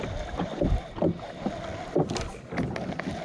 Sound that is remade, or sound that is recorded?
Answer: recorded